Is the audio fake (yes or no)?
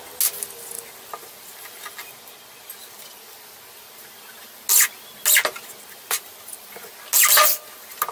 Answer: no